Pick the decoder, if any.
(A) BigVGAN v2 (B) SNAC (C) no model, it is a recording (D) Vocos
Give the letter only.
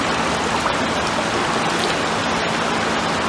C